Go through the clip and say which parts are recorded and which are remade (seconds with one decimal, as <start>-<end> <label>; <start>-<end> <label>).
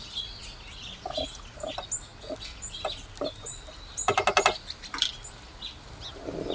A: 0.0-6.5 recorded